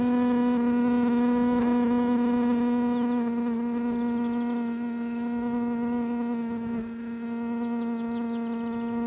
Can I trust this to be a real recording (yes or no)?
yes